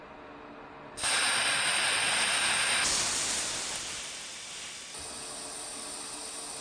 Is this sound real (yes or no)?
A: yes